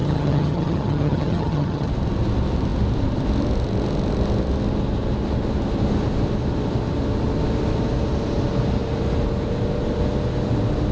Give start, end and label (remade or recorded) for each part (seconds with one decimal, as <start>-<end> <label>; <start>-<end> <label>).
0.0-1.9 remade; 1.9-10.9 recorded